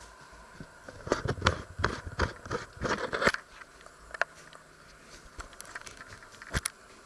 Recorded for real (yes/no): yes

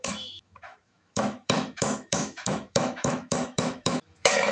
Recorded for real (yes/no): no